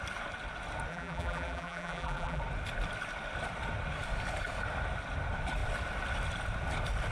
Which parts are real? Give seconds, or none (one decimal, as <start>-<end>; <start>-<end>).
0.0-0.9; 2.4-7.1